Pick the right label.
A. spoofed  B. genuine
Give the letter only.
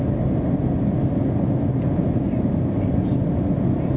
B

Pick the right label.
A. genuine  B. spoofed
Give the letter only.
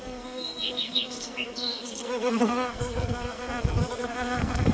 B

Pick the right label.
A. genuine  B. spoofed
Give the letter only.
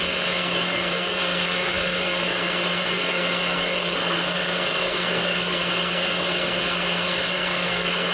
B